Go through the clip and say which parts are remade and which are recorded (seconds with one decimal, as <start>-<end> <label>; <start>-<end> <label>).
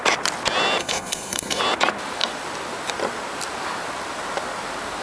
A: 0.0-0.8 recorded; 0.8-1.6 remade; 1.6-5.0 recorded